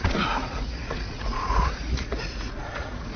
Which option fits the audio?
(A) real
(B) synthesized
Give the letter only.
B